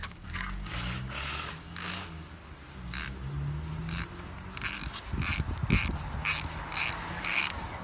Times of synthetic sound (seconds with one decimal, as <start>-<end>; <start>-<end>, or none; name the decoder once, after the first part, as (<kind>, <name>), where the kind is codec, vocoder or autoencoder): 0.0-2.4 (codec, DAC); 7.1-7.8

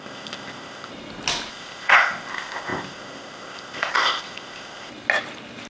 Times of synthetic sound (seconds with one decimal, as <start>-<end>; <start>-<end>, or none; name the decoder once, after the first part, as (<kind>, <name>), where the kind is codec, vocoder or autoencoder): 0.0-0.9 (codec, ZipCodec); 1.5-4.9

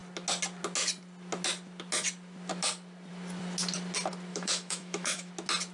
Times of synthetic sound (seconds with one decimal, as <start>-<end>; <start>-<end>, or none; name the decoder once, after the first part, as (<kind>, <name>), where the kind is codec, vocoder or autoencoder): 4.3-5.3 (autoencoder, DAC-VAE)

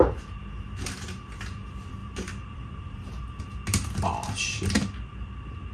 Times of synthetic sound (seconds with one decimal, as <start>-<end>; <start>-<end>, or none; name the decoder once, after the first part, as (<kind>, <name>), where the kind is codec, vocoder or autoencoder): 2.0-3.4 (vocoder, BigVGAN v2)

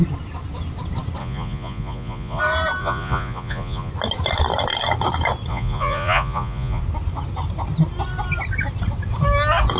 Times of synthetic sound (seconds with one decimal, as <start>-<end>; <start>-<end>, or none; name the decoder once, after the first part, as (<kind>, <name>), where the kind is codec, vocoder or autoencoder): 1.2-2.4 (vocoder, Vocos); 2.8-3.9; 5.5-6.8

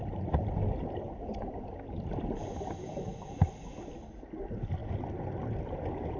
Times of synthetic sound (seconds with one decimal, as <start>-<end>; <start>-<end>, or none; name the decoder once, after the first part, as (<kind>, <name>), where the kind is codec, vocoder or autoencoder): none